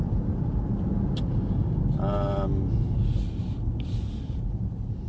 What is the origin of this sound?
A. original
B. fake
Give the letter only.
A